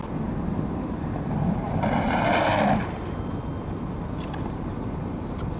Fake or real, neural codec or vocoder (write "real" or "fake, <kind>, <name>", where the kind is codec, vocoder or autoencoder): real